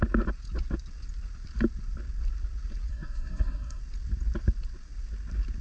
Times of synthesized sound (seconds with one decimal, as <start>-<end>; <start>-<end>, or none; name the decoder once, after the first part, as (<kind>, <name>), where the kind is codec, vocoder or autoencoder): 2.9-3.8 (codec, SNAC)